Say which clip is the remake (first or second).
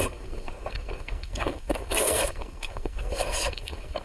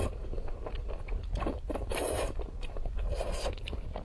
first